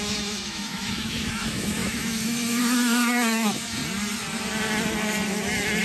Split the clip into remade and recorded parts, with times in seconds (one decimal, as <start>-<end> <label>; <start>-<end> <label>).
0.0-3.8 remade; 3.8-5.8 recorded